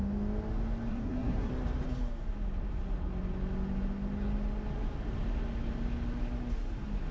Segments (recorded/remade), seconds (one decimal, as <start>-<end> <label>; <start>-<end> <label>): 0.0-0.9 recorded; 0.9-1.5 remade; 1.5-7.1 recorded